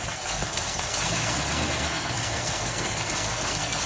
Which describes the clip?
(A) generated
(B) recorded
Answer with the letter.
A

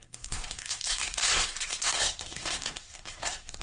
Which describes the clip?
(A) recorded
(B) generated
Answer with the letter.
B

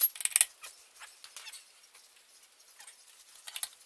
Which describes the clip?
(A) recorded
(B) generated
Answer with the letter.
A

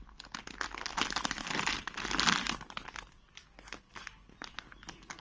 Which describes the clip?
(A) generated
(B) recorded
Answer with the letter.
B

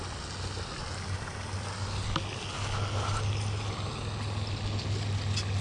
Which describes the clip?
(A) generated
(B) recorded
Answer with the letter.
B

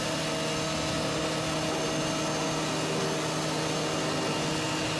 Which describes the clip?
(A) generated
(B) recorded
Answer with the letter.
B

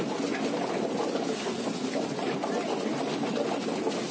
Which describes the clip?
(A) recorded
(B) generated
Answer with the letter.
A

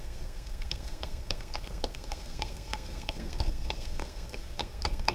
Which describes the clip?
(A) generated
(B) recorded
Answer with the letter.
A